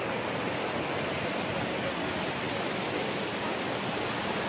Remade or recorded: recorded